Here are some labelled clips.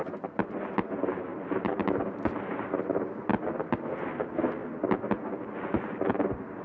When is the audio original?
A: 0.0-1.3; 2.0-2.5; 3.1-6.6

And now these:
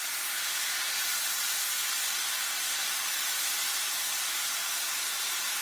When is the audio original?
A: 0.0-4.6

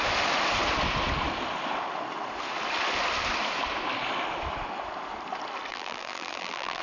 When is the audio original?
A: 0.0-5.7

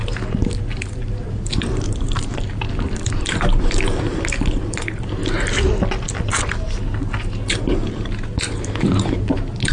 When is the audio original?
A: 0.0-0.5; 5.2-7.2